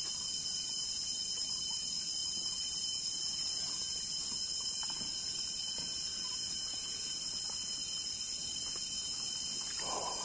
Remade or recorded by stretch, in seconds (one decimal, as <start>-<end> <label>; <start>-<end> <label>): 0.0-6.7 recorded; 6.7-7.3 remade; 7.3-10.2 recorded